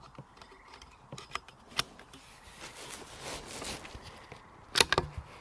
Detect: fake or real real